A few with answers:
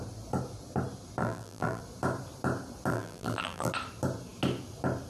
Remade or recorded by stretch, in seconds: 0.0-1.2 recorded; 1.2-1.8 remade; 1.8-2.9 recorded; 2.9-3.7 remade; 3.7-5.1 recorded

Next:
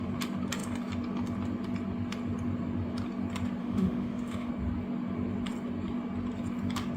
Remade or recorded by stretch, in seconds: 0.0-3.6 recorded; 3.6-4.5 remade; 4.5-7.0 recorded

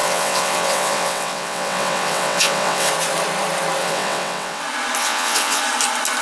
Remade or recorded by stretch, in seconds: 0.0-2.9 remade; 2.9-3.8 recorded; 3.8-4.6 remade; 4.6-5.0 recorded; 5.0-5.6 remade; 5.6-6.2 recorded

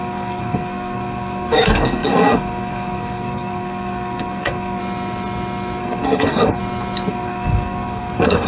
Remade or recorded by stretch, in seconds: 0.0-4.8 remade; 4.8-5.8 recorded; 5.8-6.6 remade; 6.6-7.1 recorded; 7.1-8.5 remade

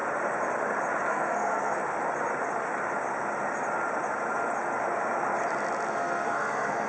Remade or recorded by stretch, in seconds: 0.0-1.1 recorded; 1.1-1.8 remade; 1.8-5.9 recorded; 5.9-6.9 remade

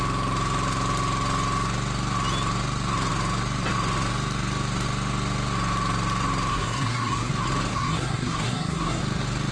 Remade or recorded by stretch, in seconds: 0.0-6.5 recorded; 6.5-7.3 remade; 7.3-7.7 recorded; 7.7-9.0 remade; 9.0-9.5 recorded